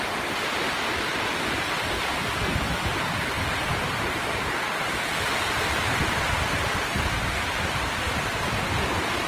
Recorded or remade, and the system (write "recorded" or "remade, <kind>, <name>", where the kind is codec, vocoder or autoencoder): recorded